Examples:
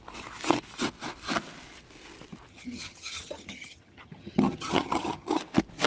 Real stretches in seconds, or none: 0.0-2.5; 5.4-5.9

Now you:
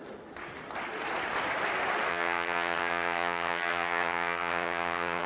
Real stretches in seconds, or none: 0.0-2.1

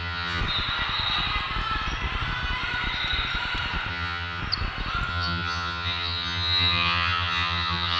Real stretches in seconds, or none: 0.4-3.9; 4.4-5.1

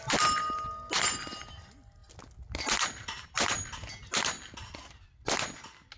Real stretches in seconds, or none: 0.0-6.0

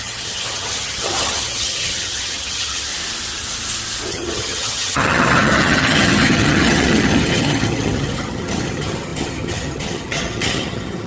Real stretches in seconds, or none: 2.9-4.1